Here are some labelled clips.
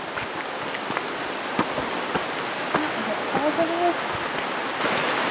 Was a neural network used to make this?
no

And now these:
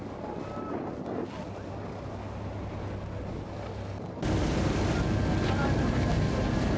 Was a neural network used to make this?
no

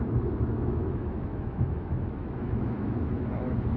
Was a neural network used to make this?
yes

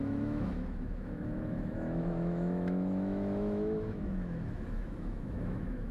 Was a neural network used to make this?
yes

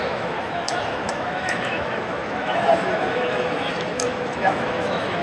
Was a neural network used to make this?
yes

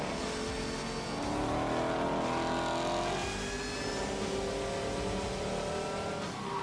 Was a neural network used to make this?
no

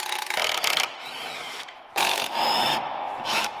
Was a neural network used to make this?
yes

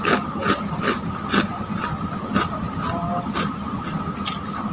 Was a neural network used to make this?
no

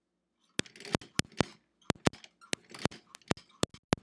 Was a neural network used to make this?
no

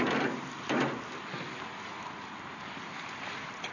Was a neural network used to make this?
no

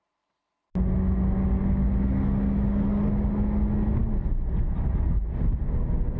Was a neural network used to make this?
no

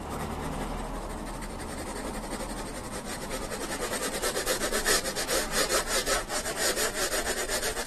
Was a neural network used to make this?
no